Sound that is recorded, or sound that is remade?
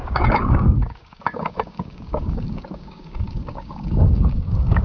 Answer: remade